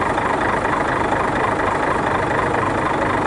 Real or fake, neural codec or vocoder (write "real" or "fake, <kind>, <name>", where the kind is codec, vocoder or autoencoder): real